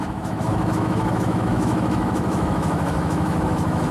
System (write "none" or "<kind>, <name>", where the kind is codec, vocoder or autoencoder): autoencoder, DAC-VAE